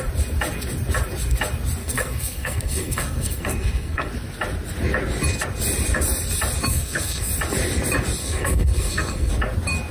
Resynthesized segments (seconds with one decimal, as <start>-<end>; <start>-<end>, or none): 1.8-4.1; 6.7-7.3; 8.2-9.3